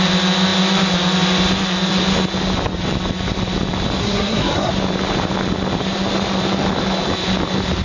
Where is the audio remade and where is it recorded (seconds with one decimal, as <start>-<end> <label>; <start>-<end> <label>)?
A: 0.0-4.0 recorded; 4.0-4.7 remade; 4.7-7.8 recorded